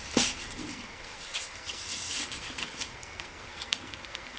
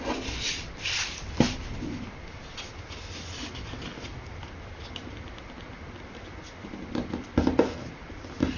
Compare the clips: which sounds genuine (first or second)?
second